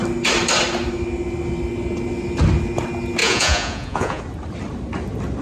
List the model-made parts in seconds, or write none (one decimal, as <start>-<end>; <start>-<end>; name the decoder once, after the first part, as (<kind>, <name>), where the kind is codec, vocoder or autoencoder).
3.2-4.2 (vocoder, Vocos)